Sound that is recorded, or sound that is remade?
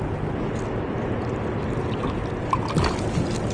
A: recorded